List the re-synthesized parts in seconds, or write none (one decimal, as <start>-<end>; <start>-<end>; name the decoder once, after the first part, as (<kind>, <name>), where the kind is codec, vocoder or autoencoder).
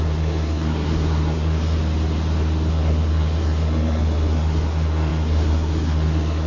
0.0-1.8 (codec, SNAC); 2.7-6.5